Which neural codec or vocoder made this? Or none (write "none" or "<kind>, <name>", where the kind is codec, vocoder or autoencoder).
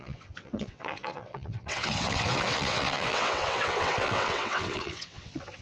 vocoder, WaveNeXt